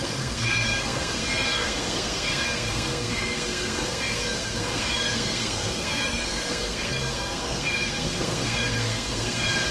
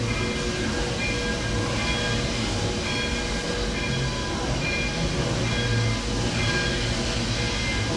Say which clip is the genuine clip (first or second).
second